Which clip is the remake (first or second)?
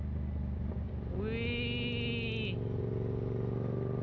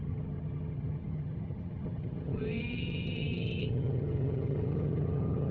second